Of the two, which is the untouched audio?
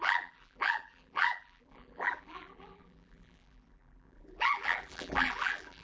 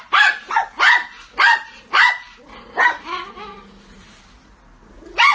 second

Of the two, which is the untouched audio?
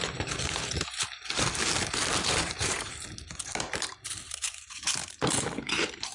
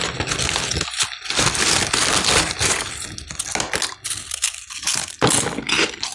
second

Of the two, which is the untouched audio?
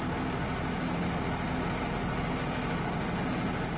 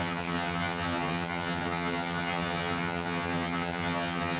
first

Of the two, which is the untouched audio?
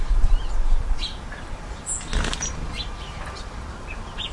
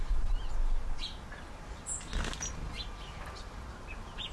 second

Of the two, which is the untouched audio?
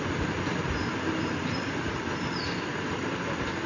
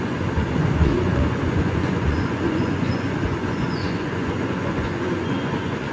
first